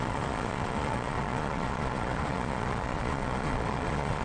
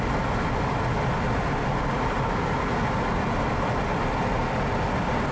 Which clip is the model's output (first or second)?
first